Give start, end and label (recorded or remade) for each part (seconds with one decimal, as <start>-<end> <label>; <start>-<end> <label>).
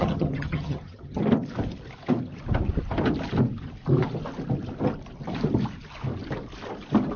0.0-1.2 remade; 1.2-7.2 recorded